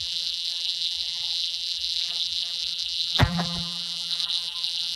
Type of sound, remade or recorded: remade